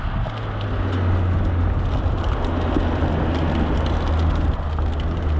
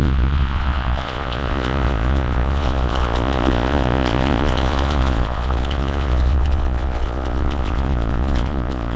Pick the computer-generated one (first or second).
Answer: second